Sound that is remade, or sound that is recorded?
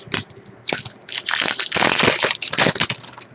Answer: recorded